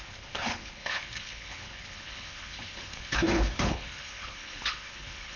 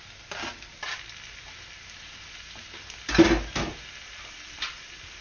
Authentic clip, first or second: second